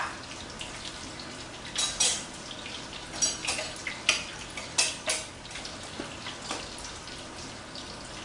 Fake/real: real